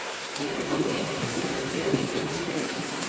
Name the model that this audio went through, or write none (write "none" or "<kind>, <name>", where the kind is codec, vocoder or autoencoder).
codec, SNAC